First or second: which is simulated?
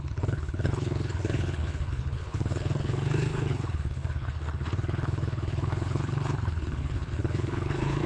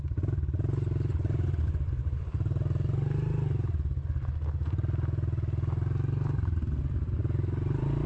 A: first